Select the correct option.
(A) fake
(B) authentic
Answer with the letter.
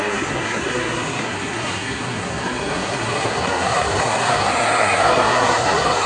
A